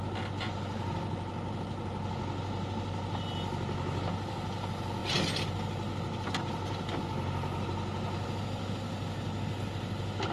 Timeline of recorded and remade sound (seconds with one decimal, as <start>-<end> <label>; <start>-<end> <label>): 0.0-10.3 recorded